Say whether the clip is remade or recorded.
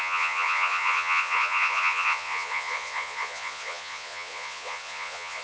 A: remade